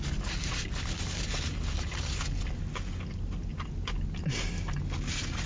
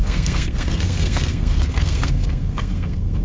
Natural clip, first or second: first